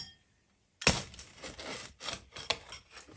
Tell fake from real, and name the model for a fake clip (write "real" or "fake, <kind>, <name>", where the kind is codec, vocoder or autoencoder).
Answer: real